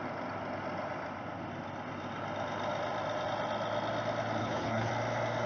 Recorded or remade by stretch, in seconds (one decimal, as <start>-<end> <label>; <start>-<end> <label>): 0.0-4.4 recorded; 4.4-4.9 remade; 4.9-5.5 recorded